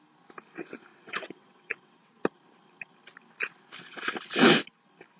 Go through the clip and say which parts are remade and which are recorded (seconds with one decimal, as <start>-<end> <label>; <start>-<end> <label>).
0.0-0.9 recorded; 0.9-2.2 remade; 2.2-5.2 recorded